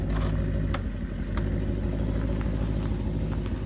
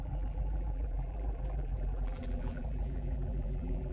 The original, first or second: first